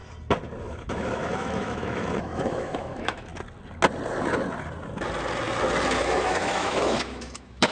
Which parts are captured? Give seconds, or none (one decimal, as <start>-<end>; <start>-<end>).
0.0-0.6; 3.3-6.0